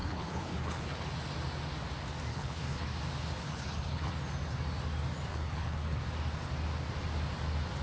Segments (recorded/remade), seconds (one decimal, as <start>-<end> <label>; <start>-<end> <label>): 0.0-1.1 remade; 1.1-2.3 recorded; 2.3-2.9 remade; 2.9-3.4 recorded; 3.4-4.1 remade; 4.1-5.3 recorded; 5.3-6.0 remade; 6.0-7.8 recorded